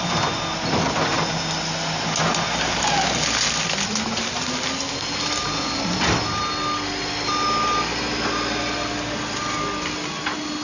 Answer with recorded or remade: recorded